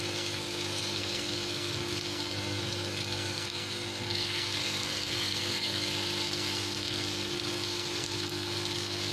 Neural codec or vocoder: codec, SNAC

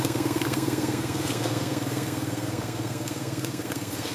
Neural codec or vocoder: codec, SNAC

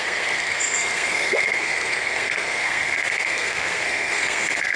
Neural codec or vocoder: codec, SNAC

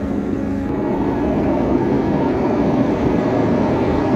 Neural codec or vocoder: codec, SNAC